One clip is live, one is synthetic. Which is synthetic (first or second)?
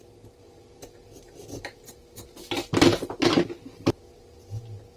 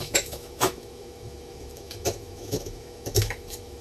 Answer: second